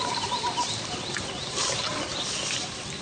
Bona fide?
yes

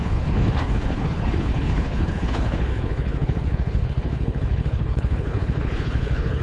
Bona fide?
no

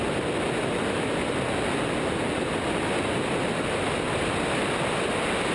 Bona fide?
yes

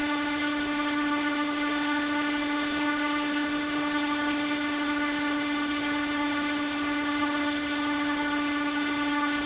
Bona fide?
no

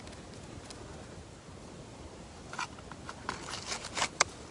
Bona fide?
yes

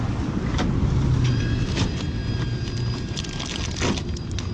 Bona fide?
yes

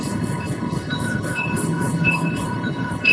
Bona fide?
no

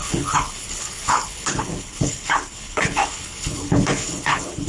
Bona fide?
no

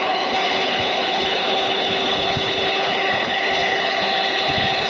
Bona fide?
no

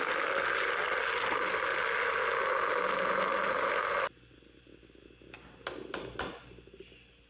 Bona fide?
yes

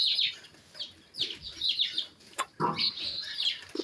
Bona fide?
yes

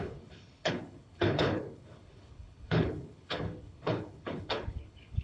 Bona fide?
no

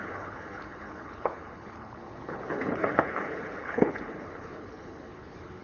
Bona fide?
no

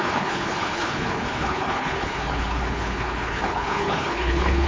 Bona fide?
no